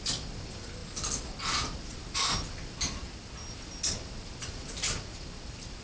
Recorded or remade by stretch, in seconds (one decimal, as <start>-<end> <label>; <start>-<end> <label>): 0.0-5.8 recorded